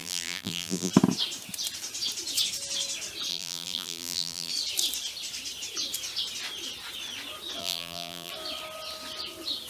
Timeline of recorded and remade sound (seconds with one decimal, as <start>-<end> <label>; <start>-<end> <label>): 0.0-0.9 remade; 0.9-3.3 recorded; 3.3-4.5 remade; 4.5-7.6 recorded; 7.6-8.3 remade; 8.3-9.7 recorded